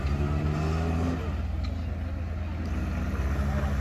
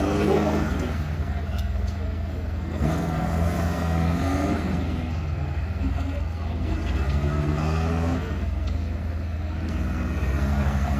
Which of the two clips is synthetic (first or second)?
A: second